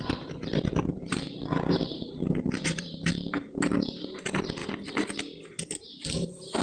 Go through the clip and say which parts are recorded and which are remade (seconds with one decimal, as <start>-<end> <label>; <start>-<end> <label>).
0.0-4.6 remade; 4.6-5.8 recorded; 5.8-6.6 remade